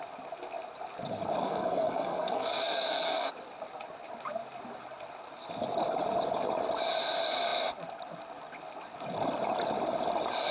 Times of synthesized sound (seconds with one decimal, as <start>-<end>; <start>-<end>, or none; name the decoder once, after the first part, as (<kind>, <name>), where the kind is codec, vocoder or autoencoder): 1.4-3.3 (codec, SNAC)